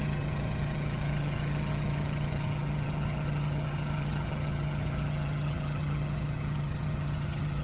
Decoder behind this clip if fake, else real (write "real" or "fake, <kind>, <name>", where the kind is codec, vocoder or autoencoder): fake, vocoder, HiFi-GAN